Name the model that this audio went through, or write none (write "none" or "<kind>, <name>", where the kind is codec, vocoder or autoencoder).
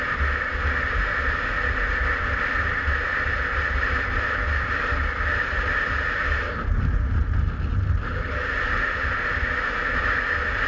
none